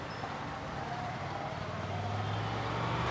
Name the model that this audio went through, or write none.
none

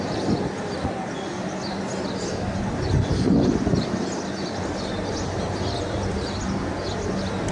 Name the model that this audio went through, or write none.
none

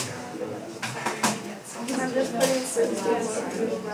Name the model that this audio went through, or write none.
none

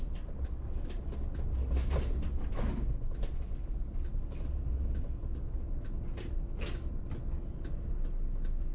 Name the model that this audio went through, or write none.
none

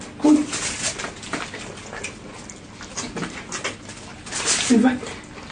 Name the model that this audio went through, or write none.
none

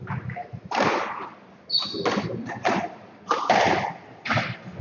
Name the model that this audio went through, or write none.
none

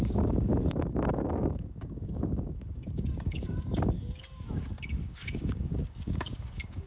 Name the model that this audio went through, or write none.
codec, DAC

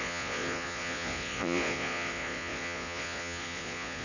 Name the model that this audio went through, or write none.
vocoder, Vocos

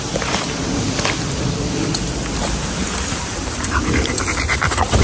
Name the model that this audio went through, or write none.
none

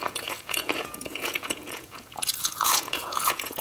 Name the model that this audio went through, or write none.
vocoder, Vocos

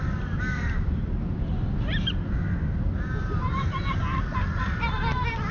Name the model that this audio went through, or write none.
none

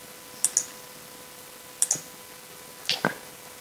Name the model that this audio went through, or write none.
none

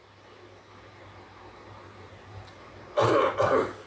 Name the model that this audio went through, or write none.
none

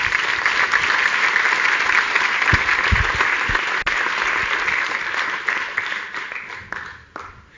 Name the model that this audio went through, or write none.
none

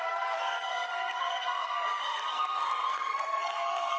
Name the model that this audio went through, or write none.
codec, SNAC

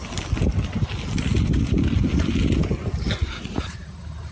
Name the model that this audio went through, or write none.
none